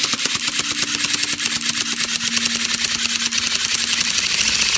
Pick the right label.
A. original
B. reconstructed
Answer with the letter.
A